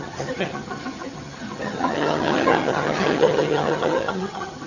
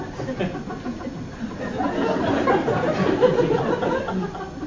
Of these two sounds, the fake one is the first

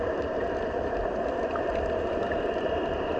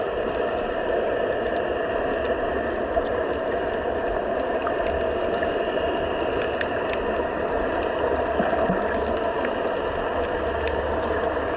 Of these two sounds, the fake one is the first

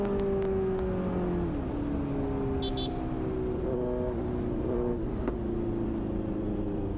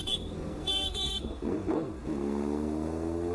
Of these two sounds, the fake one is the second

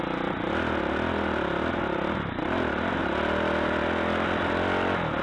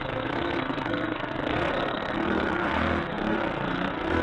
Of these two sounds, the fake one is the second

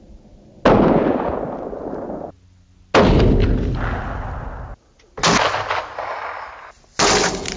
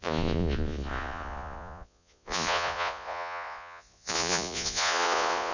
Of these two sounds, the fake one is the second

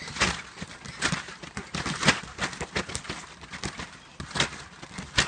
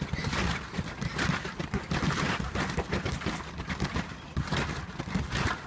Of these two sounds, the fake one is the second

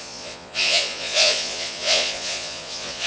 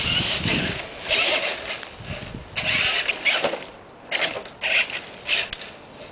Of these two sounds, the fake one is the first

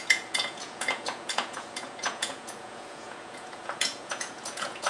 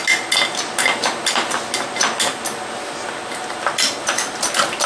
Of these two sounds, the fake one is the first